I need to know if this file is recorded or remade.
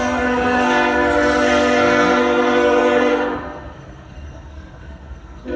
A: remade